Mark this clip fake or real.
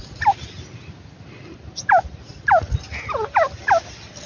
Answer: real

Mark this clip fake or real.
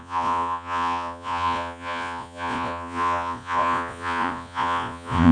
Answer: fake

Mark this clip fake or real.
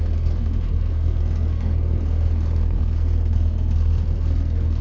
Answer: fake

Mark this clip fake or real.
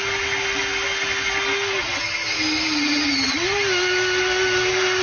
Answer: real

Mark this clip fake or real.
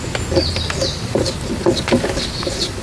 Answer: real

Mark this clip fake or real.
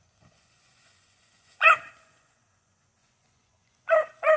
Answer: fake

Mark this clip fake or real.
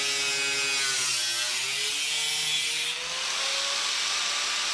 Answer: real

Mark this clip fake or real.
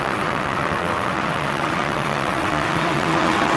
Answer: fake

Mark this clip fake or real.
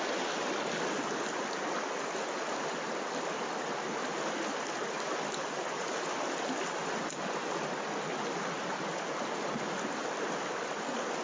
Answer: real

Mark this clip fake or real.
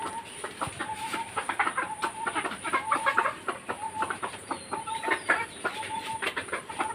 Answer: fake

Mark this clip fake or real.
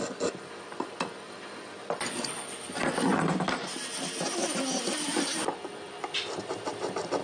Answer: real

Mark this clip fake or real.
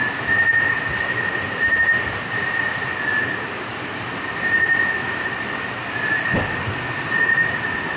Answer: real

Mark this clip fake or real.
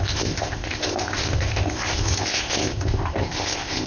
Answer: fake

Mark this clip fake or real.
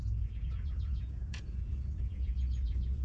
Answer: fake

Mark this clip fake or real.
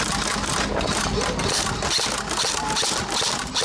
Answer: real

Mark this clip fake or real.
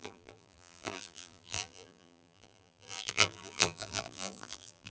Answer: fake